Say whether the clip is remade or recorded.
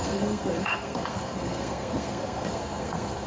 remade